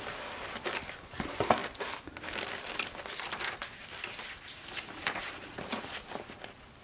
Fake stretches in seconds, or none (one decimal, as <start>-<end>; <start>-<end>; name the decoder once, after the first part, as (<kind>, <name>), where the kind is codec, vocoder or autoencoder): none